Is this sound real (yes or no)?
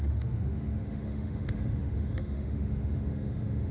no